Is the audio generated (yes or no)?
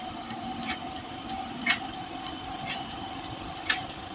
yes